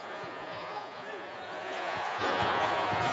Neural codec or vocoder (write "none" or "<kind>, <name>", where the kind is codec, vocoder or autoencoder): vocoder, Vocos